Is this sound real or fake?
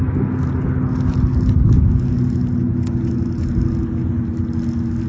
real